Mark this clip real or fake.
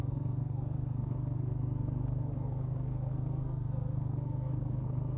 fake